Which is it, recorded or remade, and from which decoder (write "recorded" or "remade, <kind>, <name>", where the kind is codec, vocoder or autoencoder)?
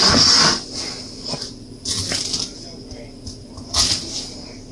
recorded